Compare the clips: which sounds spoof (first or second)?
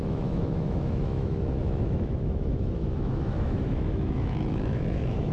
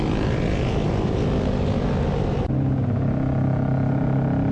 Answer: first